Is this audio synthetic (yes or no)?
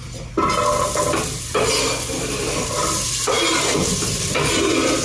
no